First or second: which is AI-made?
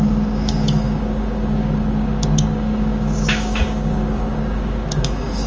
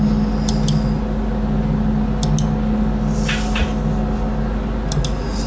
first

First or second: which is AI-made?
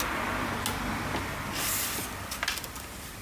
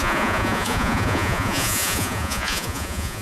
second